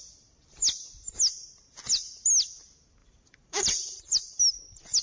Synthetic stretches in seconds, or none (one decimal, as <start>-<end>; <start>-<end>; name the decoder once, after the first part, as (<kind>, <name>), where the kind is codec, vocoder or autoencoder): 3.0-4.4 (vocoder, BigVGAN v2)